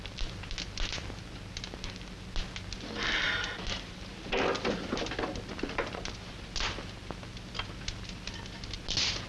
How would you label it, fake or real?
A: real